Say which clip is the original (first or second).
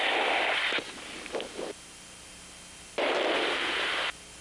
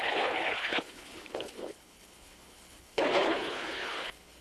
first